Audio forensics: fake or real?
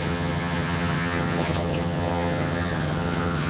fake